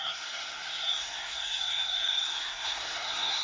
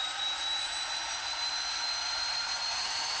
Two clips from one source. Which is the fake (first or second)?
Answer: first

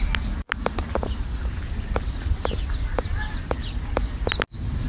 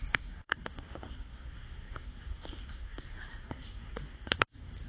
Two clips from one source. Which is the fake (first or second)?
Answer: second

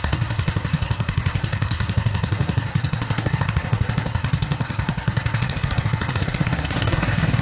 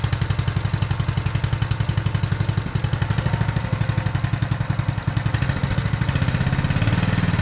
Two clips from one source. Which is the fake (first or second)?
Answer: first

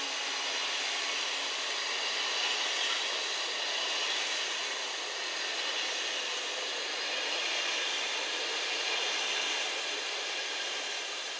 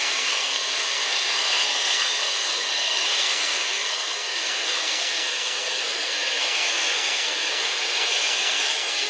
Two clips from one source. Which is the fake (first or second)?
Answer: second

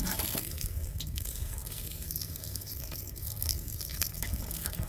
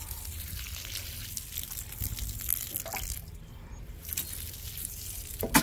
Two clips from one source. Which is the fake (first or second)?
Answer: first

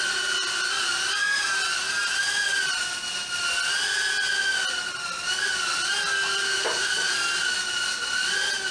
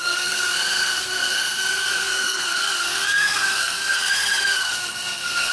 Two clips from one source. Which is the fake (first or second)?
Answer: second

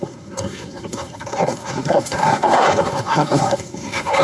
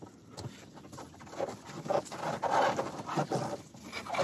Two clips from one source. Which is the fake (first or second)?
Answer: first